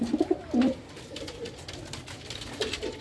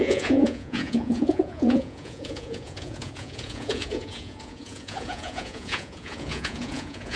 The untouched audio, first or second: first